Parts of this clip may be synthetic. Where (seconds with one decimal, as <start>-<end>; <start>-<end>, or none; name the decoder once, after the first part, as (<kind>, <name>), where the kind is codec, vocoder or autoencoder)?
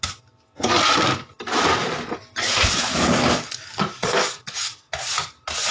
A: 2.9-4.9 (codec, DAC)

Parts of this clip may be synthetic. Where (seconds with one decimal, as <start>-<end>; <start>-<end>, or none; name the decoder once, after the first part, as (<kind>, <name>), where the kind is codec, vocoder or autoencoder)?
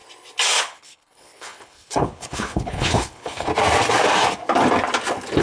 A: 0.6-3.5 (codec, HILCodec)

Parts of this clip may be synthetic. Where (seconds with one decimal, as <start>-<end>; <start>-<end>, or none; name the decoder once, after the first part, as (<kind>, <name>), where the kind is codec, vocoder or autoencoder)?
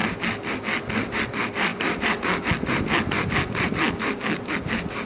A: none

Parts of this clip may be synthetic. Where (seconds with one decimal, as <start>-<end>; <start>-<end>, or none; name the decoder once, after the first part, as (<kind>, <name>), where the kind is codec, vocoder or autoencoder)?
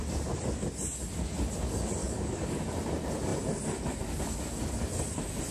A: 2.0-2.6 (codec, DAC)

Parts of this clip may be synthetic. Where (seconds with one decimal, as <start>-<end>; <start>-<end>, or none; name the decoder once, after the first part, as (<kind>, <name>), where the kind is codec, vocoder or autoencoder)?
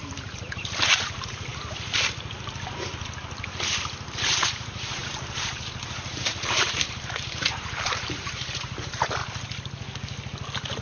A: 0.0-1.5 (vocoder, BigVGAN v2); 4.1-9.2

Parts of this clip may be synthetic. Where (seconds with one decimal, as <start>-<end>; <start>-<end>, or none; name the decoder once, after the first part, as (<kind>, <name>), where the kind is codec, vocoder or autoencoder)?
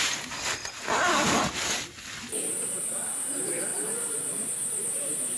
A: 0.0-0.6 (vocoder, BigVGAN v2); 3.3-3.7